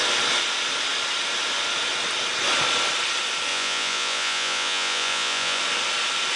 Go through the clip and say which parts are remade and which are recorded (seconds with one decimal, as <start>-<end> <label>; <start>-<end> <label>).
0.0-3.5 recorded; 3.5-5.6 remade; 5.6-6.4 recorded